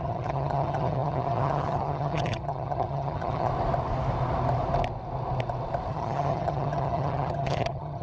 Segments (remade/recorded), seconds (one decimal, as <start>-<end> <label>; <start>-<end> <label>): 0.0-3.5 remade; 3.5-5.9 recorded; 5.9-8.0 remade